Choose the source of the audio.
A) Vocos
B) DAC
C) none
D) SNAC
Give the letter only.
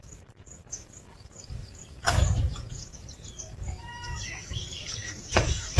B